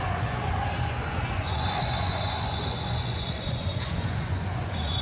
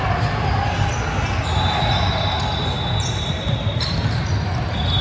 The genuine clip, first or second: second